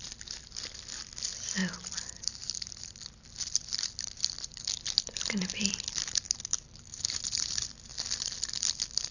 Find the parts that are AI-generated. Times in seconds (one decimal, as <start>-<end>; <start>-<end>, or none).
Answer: 1.6-6.8